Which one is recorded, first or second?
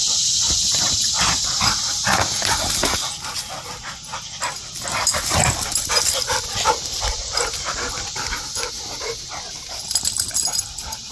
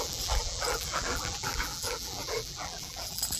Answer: first